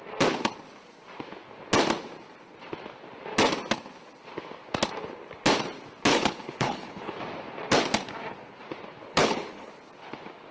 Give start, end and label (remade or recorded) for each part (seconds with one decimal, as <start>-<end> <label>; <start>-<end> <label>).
0.0-6.1 recorded; 6.1-7.2 remade; 7.2-9.1 recorded; 9.1-9.7 remade; 9.7-10.5 recorded